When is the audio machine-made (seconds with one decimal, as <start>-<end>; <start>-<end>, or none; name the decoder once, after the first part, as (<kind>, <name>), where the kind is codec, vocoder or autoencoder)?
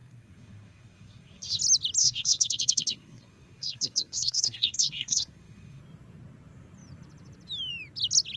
0.0-1.6 (codec, SNAC); 2.0-5.8